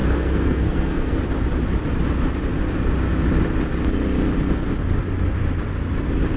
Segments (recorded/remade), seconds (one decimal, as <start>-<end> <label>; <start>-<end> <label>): 0.0-1.2 remade; 1.2-6.4 recorded